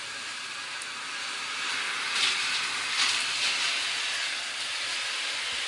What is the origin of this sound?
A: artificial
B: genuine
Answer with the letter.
B